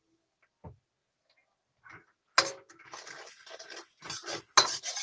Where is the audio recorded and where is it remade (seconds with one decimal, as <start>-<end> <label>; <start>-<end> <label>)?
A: 0.0-5.0 recorded